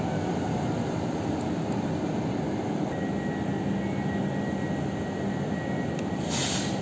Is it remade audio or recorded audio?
recorded